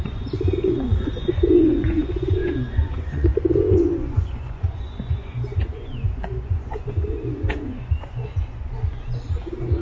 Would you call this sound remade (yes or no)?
yes